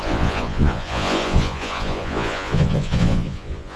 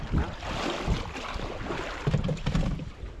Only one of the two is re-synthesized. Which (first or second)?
first